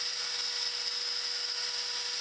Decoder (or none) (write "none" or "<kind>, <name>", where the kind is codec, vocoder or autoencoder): none